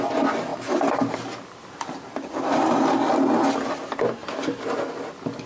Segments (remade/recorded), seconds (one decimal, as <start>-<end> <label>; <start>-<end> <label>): 0.0-5.5 recorded